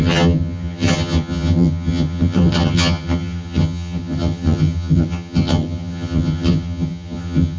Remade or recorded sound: remade